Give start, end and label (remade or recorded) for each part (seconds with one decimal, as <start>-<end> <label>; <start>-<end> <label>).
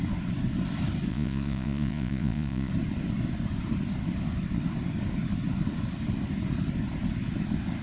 0.0-1.1 recorded; 1.1-2.7 remade; 2.7-7.8 recorded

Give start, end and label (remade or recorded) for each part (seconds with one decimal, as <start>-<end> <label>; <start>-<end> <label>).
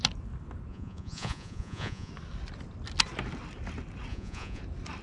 0.0-0.7 recorded; 0.7-2.1 remade; 2.1-4.1 recorded; 4.1-4.6 remade; 4.6-5.0 recorded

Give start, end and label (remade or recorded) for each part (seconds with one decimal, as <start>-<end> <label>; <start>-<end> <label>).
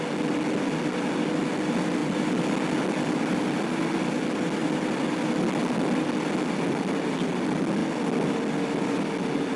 0.0-9.6 recorded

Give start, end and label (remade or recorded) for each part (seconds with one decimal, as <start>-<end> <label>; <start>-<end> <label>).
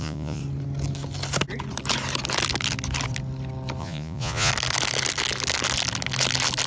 0.0-0.4 remade; 0.4-3.8 recorded; 3.8-4.5 remade; 4.5-6.7 recorded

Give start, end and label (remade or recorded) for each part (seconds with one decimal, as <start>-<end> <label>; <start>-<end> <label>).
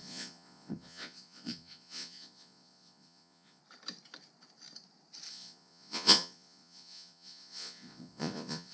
0.0-3.6 remade; 3.6-5.3 recorded; 5.3-8.7 remade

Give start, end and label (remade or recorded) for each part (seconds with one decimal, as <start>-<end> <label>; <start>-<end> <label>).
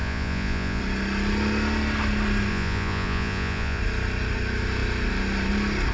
0.0-0.8 remade; 0.8-2.5 recorded; 2.5-3.8 remade; 3.8-5.9 recorded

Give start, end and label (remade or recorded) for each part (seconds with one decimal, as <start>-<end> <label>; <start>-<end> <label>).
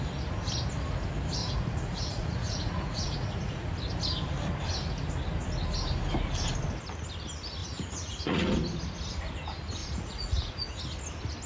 0.0-1.4 recorded; 1.4-3.7 remade; 3.7-7.6 recorded; 7.6-8.5 remade; 8.5-9.8 recorded; 9.8-10.8 remade; 10.8-11.5 recorded